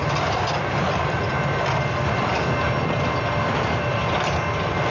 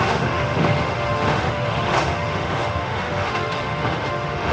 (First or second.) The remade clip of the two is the second